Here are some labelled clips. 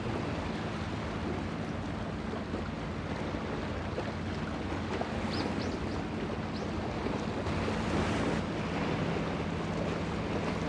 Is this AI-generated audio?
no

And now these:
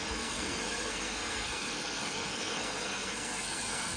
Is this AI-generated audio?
yes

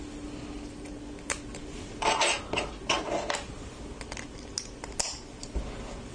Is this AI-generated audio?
no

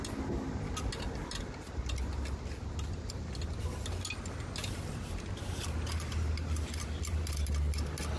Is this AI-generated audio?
no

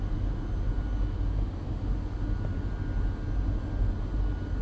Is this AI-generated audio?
no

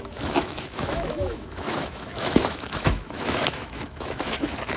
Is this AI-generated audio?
yes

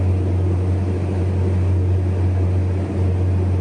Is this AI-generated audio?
no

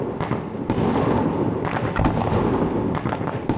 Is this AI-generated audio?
no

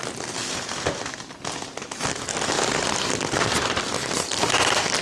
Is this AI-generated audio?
no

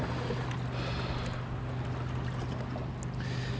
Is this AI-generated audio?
no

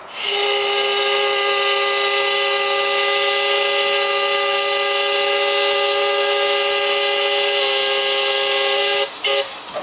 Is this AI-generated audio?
no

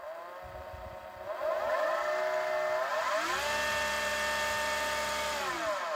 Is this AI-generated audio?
no